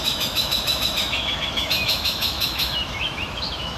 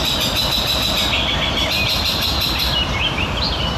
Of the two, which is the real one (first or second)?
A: second